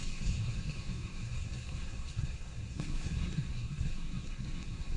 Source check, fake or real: fake